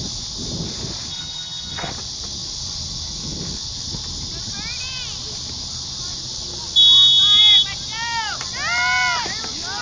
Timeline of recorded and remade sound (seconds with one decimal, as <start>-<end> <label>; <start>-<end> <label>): 0.0-1.1 recorded; 1.1-1.9 remade; 1.9-9.8 recorded